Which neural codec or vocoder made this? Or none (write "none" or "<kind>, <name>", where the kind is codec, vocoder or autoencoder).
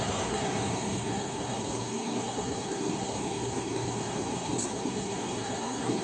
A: codec, SNAC